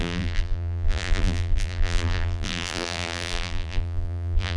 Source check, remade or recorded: remade